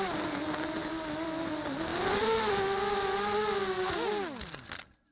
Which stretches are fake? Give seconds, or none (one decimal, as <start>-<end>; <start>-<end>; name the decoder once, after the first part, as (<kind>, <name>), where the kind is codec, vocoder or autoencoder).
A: none